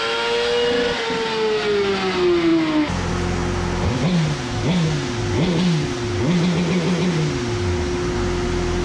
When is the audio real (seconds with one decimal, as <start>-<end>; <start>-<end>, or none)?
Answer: 0.0-8.8